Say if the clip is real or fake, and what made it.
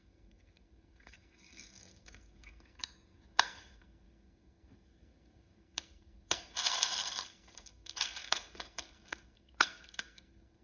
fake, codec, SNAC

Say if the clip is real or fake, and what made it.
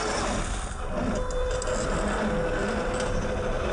real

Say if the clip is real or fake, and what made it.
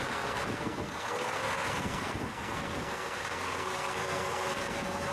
fake, codec, SNAC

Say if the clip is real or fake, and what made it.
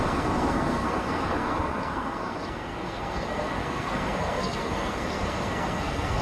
fake, codec, SNAC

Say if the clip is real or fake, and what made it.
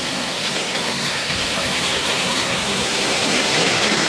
fake, codec, SNAC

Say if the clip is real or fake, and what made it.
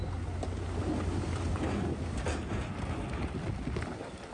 real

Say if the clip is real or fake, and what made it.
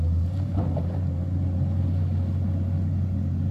real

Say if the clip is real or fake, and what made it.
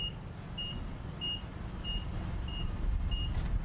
real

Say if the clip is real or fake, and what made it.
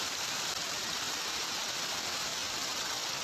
real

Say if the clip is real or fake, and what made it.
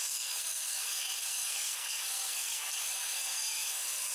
fake, codec, SNAC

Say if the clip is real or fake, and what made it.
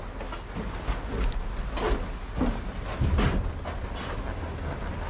real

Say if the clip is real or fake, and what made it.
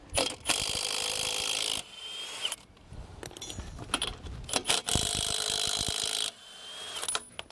real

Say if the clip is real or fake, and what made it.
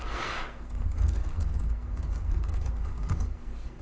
fake, codec, SNAC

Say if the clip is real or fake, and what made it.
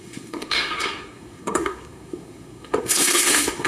fake, codec, SNAC